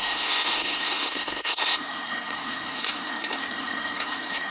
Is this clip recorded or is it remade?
remade